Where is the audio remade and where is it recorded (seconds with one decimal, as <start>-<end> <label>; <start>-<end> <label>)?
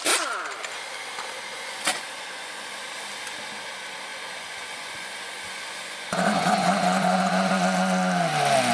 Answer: 0.0-1.5 recorded; 1.5-2.7 remade; 2.7-4.1 recorded; 4.1-7.5 remade; 7.5-8.7 recorded